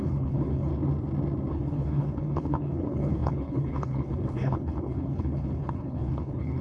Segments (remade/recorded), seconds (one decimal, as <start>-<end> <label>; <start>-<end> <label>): 0.0-0.7 remade; 0.7-1.5 recorded; 1.5-6.6 remade